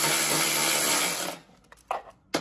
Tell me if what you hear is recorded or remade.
recorded